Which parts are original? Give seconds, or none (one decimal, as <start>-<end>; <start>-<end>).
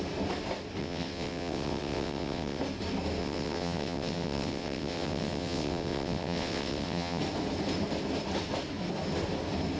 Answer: 0.0-0.8; 2.6-3.2; 7.2-9.8